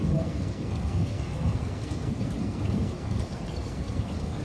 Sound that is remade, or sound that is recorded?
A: remade